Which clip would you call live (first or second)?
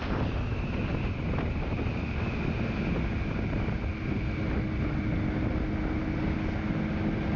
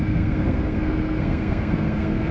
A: first